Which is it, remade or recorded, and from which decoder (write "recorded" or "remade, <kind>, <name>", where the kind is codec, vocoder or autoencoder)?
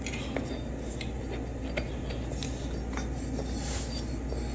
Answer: recorded